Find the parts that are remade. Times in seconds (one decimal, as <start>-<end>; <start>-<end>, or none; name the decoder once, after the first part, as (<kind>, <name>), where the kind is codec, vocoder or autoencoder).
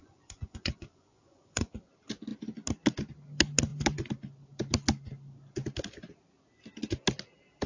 0.0-1.7 (vocoder, Vocos)